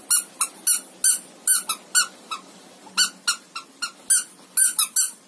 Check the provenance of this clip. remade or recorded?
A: recorded